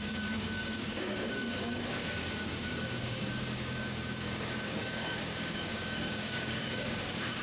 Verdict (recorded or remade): remade